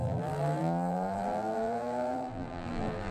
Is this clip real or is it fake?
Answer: fake